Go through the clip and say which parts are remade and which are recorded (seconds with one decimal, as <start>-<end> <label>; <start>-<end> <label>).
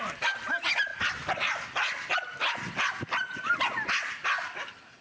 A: 0.0-5.0 recorded